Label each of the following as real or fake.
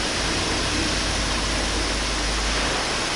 real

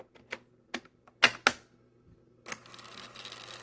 real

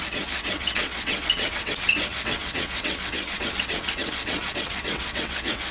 fake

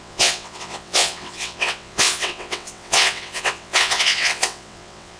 fake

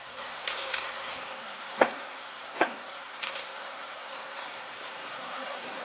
fake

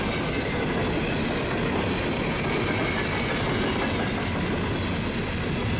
real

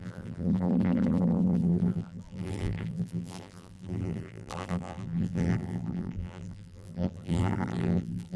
fake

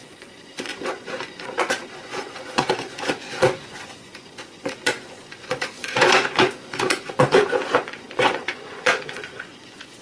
fake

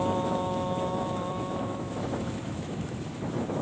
fake